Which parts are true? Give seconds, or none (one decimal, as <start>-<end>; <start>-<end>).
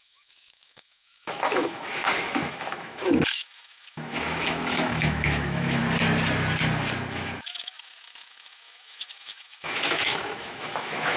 5.8-7.1